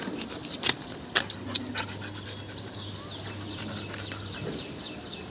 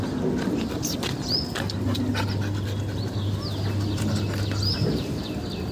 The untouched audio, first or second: second